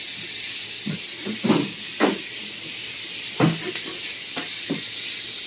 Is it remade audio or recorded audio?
recorded